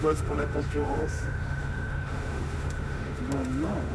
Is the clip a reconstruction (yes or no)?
yes